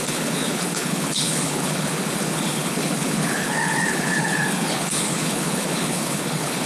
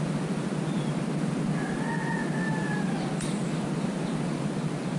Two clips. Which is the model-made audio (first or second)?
first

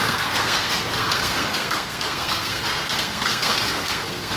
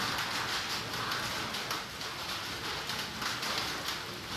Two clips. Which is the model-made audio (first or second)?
first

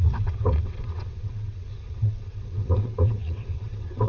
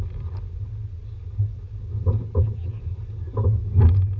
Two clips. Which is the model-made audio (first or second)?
first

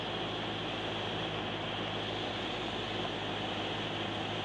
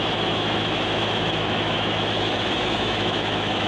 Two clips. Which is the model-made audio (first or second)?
second